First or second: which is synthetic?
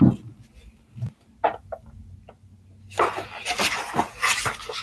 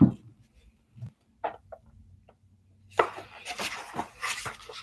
second